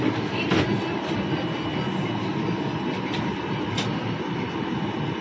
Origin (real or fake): real